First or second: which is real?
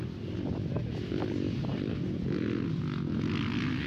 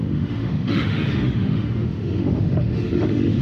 first